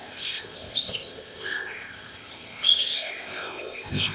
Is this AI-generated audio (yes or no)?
yes